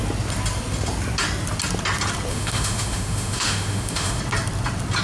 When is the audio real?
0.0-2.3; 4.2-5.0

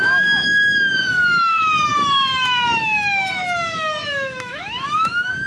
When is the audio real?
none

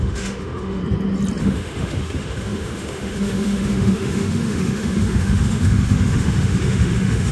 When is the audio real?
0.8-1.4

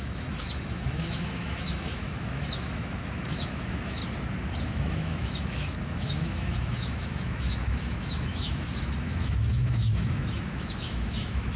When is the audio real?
4.0-4.6

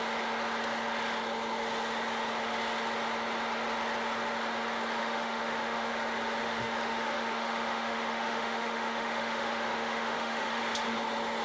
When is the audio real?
0.0-5.0; 5.9-6.4; 10.6-11.4

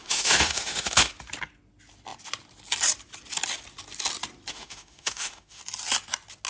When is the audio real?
1.1-4.5; 5.6-6.5

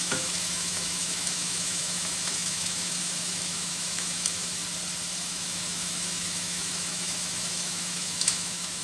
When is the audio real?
4.6-5.2